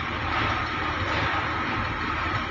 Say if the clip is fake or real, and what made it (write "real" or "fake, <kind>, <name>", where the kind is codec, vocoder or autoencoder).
real